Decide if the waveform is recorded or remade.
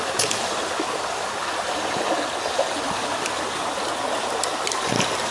recorded